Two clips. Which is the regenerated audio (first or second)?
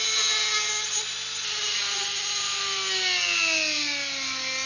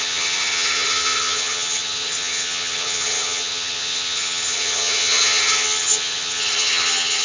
second